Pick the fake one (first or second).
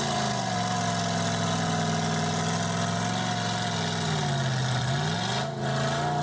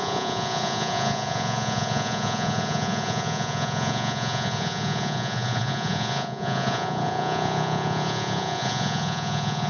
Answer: second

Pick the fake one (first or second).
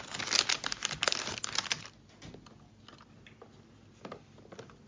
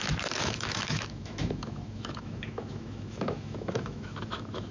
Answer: second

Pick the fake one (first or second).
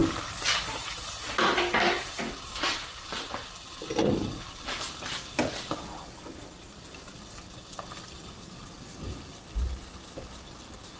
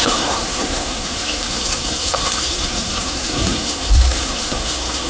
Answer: second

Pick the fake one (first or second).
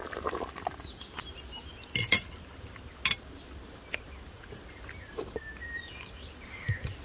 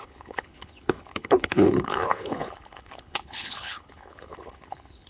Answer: second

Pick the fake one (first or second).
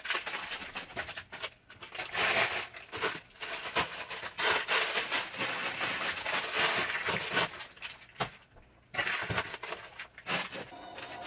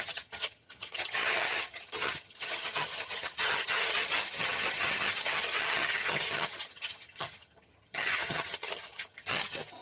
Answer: second